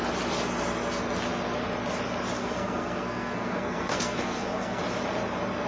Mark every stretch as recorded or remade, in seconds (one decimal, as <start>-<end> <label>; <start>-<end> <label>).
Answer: 0.0-2.4 recorded; 2.4-4.8 remade; 4.8-5.7 recorded